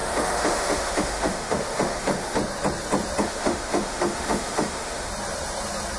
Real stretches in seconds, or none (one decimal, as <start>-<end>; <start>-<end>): 2.4-3.2; 5.1-6.0